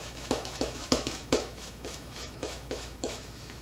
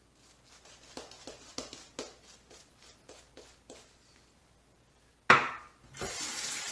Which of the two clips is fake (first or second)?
first